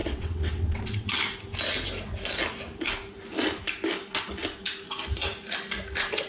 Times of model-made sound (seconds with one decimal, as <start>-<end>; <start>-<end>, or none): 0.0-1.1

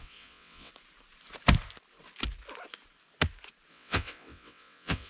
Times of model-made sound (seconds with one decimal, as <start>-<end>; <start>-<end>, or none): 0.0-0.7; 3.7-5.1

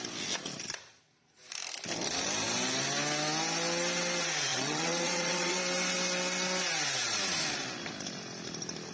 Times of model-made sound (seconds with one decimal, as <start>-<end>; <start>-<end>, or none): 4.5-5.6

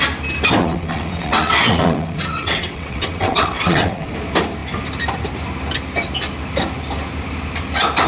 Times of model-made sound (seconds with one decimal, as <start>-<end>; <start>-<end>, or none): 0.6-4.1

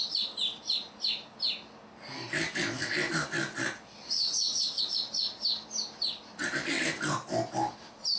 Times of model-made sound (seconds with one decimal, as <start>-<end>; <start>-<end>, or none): 3.9-4.8